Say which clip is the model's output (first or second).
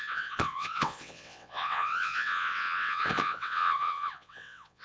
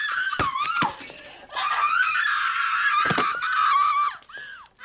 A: first